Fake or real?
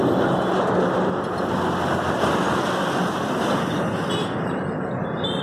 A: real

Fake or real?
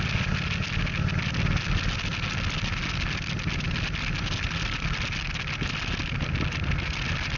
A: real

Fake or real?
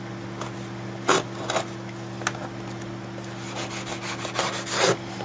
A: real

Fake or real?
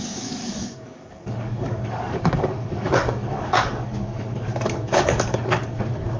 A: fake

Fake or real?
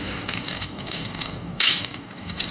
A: fake